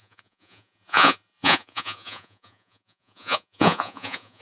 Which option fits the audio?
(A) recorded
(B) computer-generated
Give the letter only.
B